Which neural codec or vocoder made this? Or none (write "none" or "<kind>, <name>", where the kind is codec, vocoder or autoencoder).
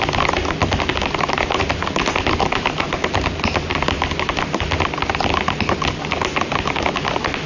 none